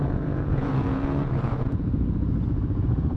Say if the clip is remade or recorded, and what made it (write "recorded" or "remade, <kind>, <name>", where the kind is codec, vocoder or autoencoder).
remade, vocoder, Vocos